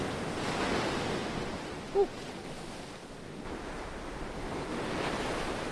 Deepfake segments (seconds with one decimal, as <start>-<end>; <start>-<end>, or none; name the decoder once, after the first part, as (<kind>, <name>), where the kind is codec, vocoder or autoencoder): none